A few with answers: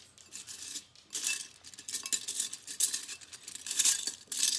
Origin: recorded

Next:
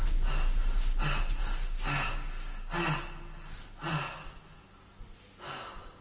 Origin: recorded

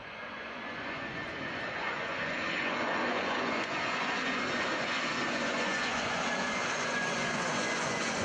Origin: remade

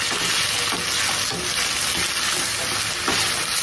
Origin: recorded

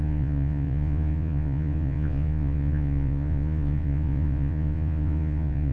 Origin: remade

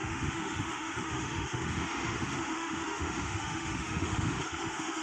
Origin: remade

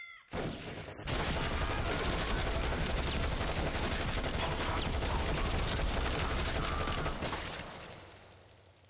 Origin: recorded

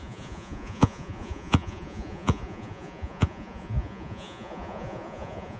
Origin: remade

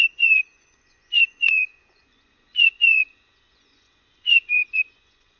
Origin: remade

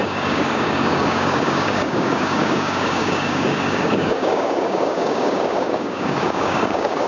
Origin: remade